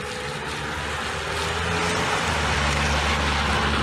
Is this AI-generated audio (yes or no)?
no